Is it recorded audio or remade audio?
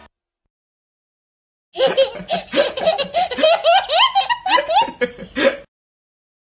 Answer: recorded